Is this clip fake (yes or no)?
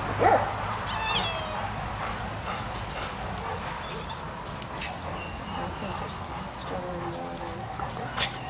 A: no